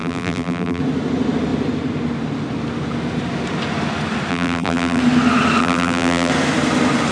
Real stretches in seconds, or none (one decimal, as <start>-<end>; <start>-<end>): 0.8-4.3; 5.0-5.6; 6.3-7.1

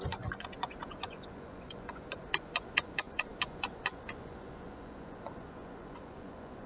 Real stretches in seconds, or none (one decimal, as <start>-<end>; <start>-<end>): none

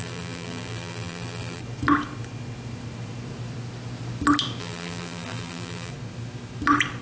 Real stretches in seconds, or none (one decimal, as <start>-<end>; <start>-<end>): 1.6-4.6; 5.9-7.0

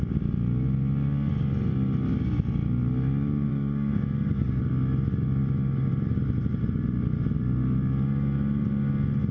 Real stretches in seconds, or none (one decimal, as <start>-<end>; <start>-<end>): 0.0-3.5; 4.6-9.3

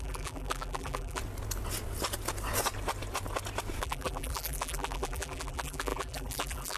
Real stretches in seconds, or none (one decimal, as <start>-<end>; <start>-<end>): 1.2-3.8

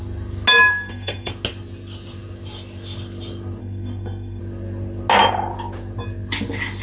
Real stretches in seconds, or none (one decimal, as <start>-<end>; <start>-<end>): 0.0-0.7; 1.3-3.6; 4.4-6.8

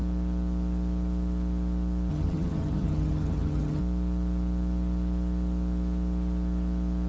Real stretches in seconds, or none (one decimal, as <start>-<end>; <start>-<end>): 0.0-2.1; 3.8-7.1

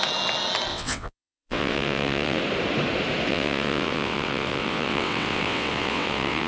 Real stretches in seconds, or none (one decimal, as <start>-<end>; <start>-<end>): 0.0-0.7; 2.4-3.3